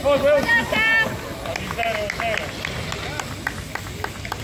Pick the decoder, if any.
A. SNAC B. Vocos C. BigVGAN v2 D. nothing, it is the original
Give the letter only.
D